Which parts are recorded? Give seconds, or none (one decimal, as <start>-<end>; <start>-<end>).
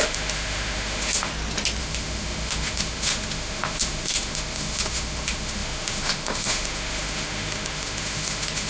1.3-1.8